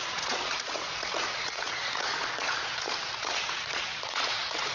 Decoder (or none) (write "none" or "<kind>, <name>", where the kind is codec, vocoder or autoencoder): vocoder, Vocos